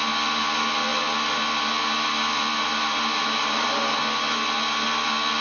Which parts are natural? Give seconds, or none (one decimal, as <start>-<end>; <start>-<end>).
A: 0.0-2.6; 4.0-5.4